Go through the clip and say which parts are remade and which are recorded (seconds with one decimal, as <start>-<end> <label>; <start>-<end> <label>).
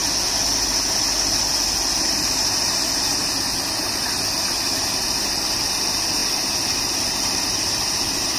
0.0-8.4 recorded